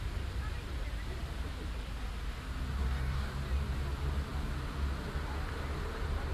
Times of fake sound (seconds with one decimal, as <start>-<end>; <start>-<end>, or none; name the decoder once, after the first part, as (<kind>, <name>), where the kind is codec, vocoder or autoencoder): 2.8-3.3 (codec, DAC)